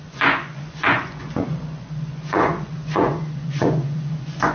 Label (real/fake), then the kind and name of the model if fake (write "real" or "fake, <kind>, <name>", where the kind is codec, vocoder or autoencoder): fake, vocoder, Vocos